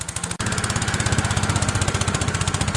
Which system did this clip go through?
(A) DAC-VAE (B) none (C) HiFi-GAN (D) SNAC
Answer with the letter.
B